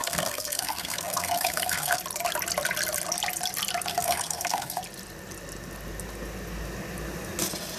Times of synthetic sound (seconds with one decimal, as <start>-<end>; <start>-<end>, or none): 0.0-2.0; 3.9-4.8